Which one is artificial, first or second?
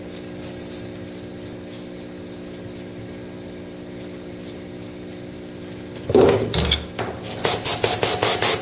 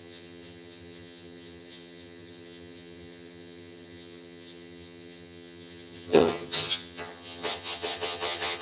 second